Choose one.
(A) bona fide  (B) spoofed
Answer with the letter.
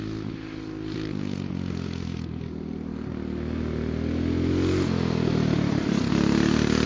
A